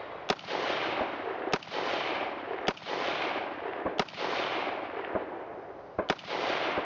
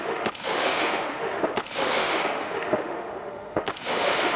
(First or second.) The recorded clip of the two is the first